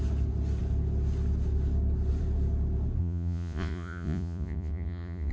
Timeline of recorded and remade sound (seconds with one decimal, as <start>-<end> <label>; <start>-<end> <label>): 0.0-3.0 recorded; 3.0-5.3 remade